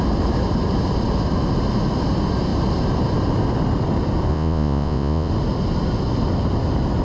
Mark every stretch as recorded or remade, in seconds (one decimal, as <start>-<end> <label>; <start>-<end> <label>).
0.0-4.3 recorded; 4.3-5.3 remade; 5.3-7.0 recorded

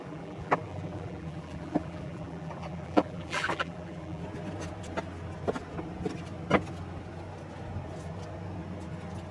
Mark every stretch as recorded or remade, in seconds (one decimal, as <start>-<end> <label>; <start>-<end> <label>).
0.0-4.2 remade; 4.2-9.3 recorded

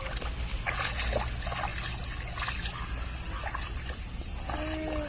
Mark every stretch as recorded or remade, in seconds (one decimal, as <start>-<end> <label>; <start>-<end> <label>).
0.0-5.1 recorded

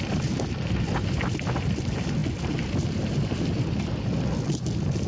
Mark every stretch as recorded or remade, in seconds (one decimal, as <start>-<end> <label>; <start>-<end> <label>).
0.0-5.1 recorded

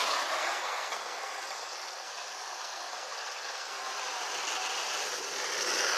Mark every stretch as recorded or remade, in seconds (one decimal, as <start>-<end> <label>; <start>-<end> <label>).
0.0-0.4 recorded; 0.4-4.0 remade; 4.0-6.0 recorded

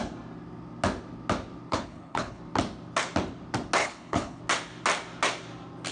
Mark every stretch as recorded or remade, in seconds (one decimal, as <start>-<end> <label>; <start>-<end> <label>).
0.0-1.7 recorded; 1.7-2.4 remade; 2.4-3.8 recorded; 3.8-4.4 remade; 4.4-5.9 recorded

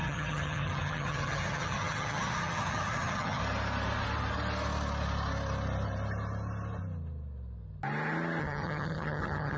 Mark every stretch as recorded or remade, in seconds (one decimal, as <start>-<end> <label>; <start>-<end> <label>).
0.0-3.4 remade; 3.4-8.4 recorded; 8.4-9.6 remade